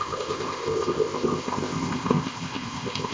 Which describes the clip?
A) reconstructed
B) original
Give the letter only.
A